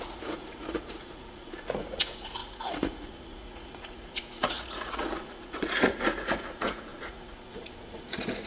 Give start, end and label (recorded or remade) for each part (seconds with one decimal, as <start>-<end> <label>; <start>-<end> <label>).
0.0-8.5 remade